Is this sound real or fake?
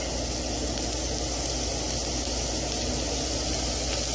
real